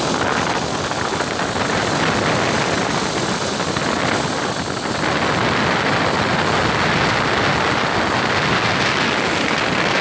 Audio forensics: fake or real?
real